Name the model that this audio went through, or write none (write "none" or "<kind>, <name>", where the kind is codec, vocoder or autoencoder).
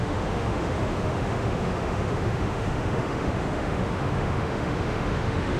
autoencoder, DAC-VAE